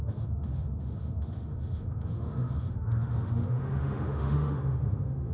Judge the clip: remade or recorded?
remade